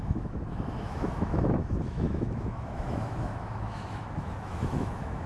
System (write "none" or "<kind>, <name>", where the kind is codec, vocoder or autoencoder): autoencoder, DAC-VAE